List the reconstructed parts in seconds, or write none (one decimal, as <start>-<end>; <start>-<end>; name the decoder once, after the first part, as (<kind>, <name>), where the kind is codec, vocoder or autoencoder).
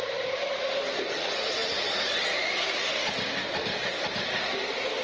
none